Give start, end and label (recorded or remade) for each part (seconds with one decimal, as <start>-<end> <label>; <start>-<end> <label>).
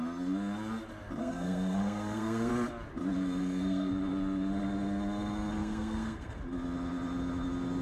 0.0-1.2 recorded; 1.2-2.5 remade; 2.5-3.4 recorded; 3.4-3.9 remade; 3.9-5.6 recorded; 5.6-6.4 remade; 6.4-7.8 recorded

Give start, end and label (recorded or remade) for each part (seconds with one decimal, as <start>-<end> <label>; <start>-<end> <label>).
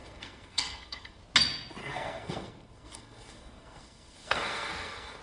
0.0-1.2 remade; 1.2-1.8 recorded; 1.8-5.2 remade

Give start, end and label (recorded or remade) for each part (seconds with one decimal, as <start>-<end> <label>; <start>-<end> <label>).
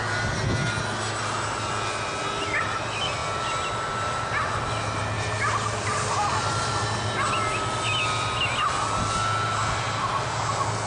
0.0-10.9 recorded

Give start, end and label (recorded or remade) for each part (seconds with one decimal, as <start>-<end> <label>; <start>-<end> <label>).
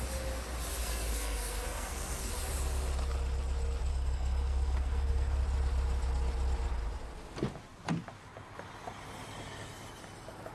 0.0-0.7 recorded; 0.7-2.3 remade; 2.3-3.9 recorded; 3.9-5.4 remade; 5.4-10.5 recorded